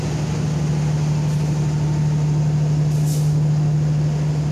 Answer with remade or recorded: recorded